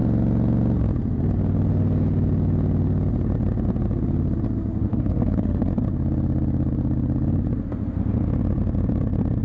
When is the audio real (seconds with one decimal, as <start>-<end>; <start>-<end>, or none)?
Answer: 0.0-4.9; 5.7-9.4